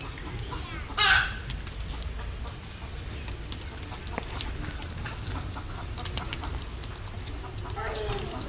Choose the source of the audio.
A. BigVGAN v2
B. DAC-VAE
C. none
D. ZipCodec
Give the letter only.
C